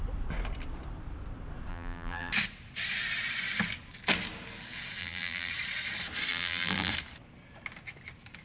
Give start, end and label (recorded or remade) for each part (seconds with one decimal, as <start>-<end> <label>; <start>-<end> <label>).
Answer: 0.0-1.7 recorded; 1.7-2.3 remade; 2.3-5.0 recorded; 5.0-5.5 remade; 5.5-6.3 recorded; 6.3-6.9 remade; 6.9-8.4 recorded